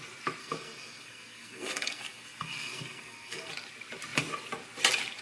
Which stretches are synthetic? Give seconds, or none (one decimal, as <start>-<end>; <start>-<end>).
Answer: 0.4-3.5